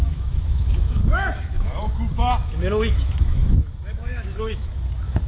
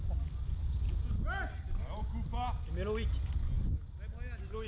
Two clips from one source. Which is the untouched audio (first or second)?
second